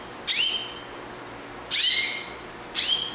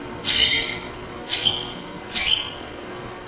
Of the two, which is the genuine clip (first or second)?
first